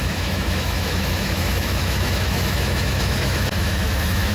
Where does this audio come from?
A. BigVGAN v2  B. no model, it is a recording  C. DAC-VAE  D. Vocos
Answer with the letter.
C